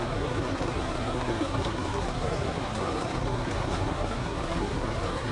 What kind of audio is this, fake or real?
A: fake